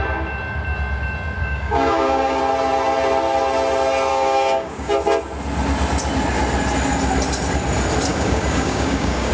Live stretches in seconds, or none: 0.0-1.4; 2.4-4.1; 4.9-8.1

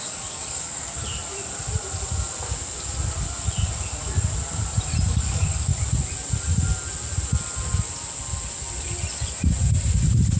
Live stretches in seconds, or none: 1.0-5.1; 5.7-10.4

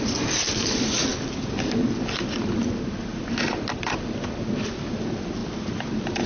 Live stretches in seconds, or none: 0.0-6.3

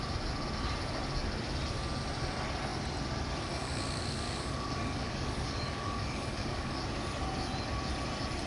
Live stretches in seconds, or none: 0.0-3.6; 6.8-8.5